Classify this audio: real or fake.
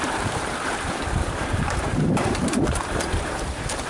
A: fake